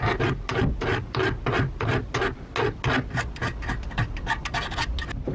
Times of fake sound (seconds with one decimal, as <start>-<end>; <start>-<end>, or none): none